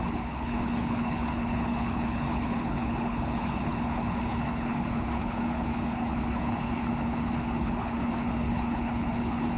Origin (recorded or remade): remade